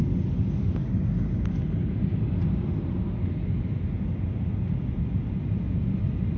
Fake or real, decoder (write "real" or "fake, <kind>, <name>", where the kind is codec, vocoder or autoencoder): real